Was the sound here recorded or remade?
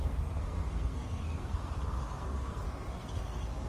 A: remade